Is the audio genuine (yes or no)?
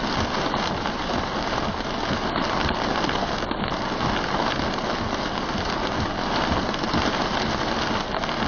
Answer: yes